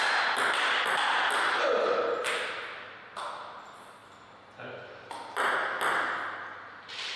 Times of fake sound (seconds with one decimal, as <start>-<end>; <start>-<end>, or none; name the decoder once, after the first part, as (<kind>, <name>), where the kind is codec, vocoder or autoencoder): none